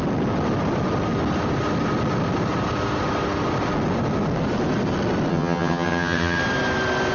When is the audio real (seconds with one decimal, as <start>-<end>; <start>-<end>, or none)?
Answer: 0.0-5.3; 6.4-7.1